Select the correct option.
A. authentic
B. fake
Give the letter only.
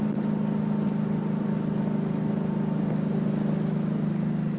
A